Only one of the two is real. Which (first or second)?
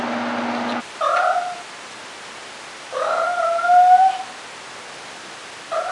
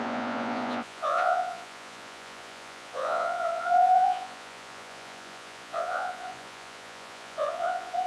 first